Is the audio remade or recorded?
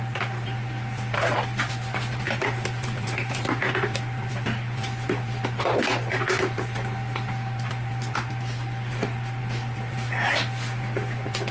recorded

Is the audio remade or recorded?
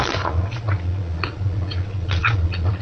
remade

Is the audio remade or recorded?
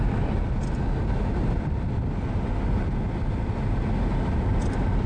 recorded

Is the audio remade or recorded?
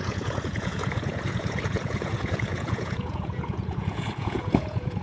remade